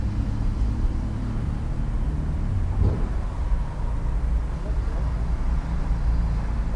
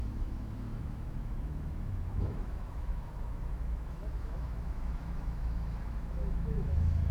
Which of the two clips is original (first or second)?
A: first